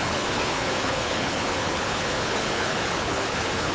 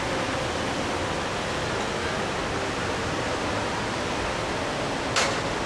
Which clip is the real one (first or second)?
second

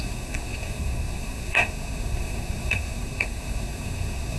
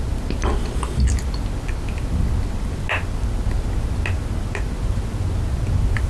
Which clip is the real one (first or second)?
second